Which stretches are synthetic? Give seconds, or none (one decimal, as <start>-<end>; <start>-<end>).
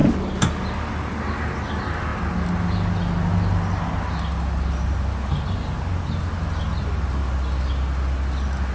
none